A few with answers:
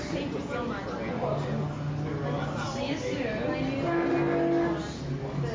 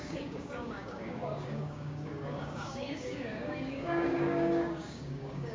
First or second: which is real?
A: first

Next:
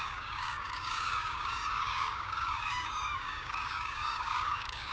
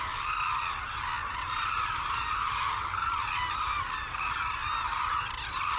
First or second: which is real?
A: second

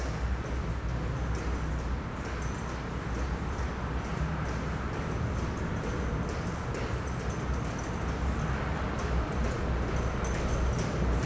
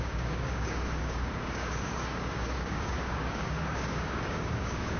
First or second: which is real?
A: first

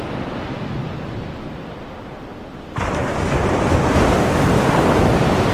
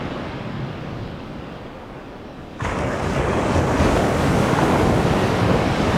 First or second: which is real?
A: first